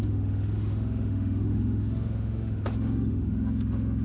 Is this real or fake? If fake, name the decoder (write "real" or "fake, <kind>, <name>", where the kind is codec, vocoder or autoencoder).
fake, autoencoder, DAC-VAE